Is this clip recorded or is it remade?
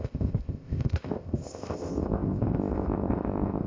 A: remade